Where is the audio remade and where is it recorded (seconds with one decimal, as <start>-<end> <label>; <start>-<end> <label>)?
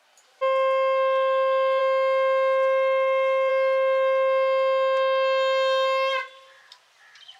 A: 0.0-1.8 recorded; 1.8-3.5 remade; 3.5-7.4 recorded